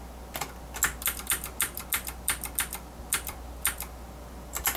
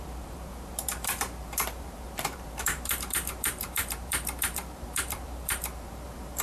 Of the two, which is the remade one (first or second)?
second